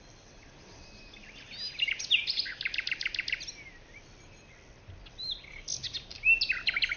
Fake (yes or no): no